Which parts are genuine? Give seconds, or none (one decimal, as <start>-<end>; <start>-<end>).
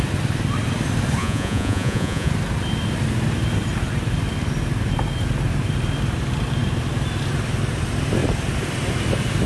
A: 0.0-1.2; 2.3-9.5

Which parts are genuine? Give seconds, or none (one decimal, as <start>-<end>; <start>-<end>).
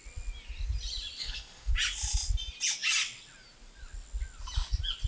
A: 0.0-1.2; 1.7-5.1